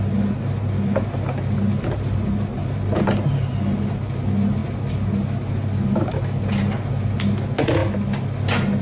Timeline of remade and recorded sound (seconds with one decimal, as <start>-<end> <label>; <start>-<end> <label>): 0.0-8.8 recorded